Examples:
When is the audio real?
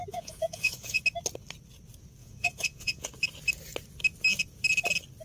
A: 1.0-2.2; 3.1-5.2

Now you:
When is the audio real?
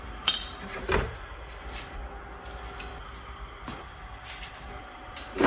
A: 2.0-4.5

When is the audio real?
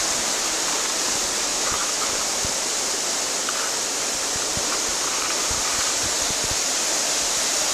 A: 0.0-1.5; 2.1-7.7